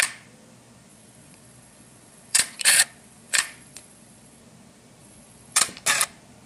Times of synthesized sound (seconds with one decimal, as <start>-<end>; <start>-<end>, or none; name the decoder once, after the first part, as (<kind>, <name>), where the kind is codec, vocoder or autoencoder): 0.9-4.4 (vocoder, Vocos); 5.0-5.7